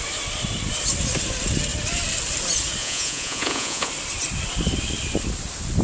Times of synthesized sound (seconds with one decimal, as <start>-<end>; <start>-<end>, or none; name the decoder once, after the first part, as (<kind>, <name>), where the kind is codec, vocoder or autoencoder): 2.8-3.9 (vocoder, Vocos)